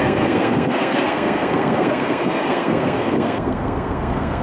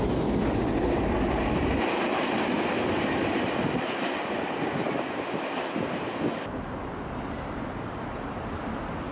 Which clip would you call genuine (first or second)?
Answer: second